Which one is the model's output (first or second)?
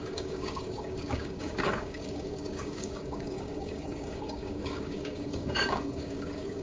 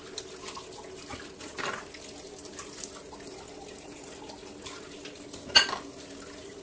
first